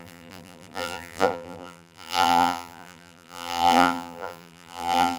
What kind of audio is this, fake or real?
fake